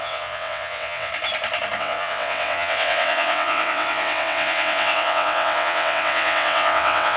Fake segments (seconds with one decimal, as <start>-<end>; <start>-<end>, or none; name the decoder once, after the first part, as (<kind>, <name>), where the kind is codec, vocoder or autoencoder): 0.0-1.1 (vocoder, WaveNeXt); 1.8-7.2